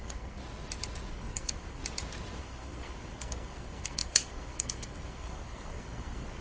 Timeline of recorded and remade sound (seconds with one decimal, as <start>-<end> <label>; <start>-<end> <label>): 0.0-0.4 remade; 0.4-1.1 recorded; 1.1-1.8 remade; 1.8-2.4 recorded; 2.4-6.4 remade